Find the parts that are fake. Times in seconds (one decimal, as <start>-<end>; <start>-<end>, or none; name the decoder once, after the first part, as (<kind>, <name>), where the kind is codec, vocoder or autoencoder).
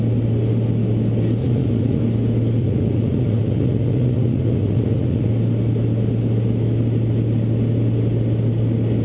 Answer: 1.4-2.0 (vocoder, Vocos); 2.6-5.3